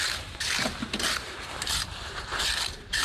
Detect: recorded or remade remade